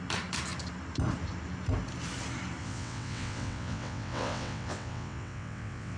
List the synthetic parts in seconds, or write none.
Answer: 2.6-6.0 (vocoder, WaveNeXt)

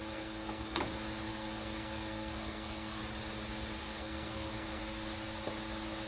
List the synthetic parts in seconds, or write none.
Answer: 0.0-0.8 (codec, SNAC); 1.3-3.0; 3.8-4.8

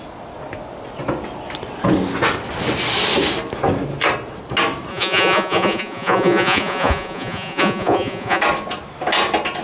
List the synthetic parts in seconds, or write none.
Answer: 4.9-8.4 (vocoder, Vocos)